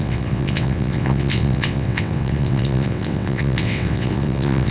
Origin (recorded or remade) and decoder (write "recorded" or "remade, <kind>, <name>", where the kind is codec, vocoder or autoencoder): remade, vocoder, WaveNeXt